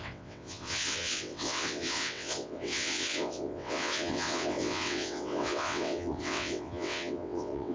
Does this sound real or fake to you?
fake